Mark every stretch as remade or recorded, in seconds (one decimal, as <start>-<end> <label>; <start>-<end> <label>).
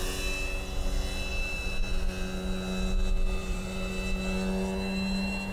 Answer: 0.0-3.4 recorded; 3.4-3.9 remade; 3.9-5.5 recorded